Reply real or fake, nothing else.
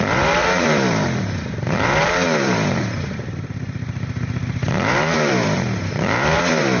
fake